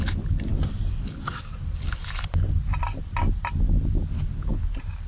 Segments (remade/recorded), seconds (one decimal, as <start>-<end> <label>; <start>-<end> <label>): 0.0-0.5 recorded; 0.5-1.9 remade; 1.9-5.1 recorded